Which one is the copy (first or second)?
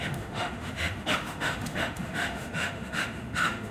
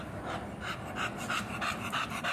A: first